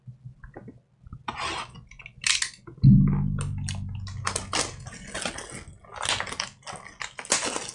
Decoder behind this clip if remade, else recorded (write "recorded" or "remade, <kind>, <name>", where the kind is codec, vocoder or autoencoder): recorded